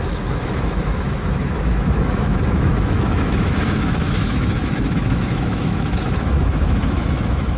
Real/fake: fake